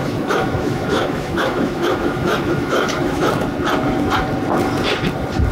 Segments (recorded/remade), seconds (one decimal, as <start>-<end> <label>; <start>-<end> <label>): 0.0-3.3 remade; 3.3-5.5 recorded